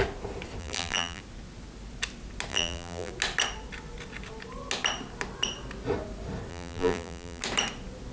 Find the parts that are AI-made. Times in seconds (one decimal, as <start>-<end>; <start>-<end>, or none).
0.6-1.2; 2.5-3.1; 6.5-7.4